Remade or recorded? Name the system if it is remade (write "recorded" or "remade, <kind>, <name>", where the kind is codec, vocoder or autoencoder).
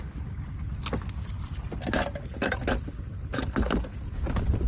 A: recorded